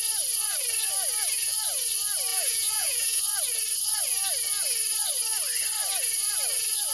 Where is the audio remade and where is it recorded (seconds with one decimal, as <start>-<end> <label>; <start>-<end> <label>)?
0.0-2.3 recorded; 2.3-3.2 remade; 3.2-6.9 recorded